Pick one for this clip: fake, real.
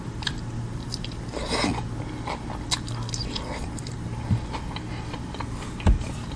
real